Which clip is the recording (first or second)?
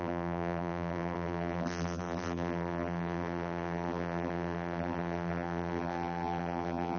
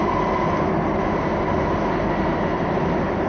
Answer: second